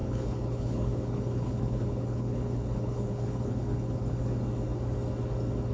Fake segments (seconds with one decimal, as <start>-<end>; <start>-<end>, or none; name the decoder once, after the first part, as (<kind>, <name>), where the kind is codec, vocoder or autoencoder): 0.0-4.2 (codec, HILCodec)